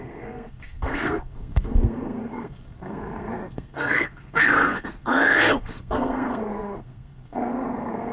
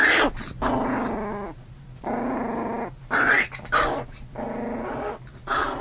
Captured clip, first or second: second